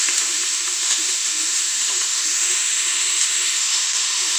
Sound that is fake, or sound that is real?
fake